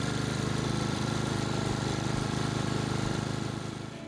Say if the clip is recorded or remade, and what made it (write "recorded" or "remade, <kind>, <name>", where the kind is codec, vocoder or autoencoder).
remade, vocoder, BigVGAN v2